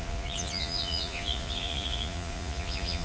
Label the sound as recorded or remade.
remade